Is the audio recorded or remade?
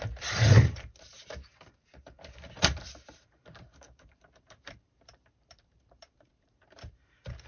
remade